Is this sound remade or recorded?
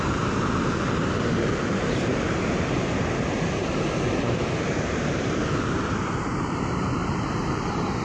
remade